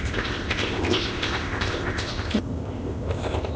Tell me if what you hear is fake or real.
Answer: fake